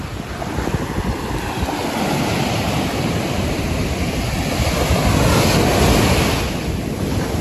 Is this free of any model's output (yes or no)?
yes